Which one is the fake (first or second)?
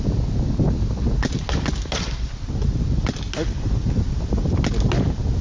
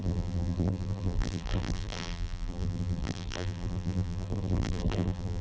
second